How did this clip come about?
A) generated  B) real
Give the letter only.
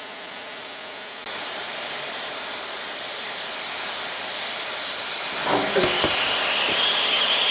B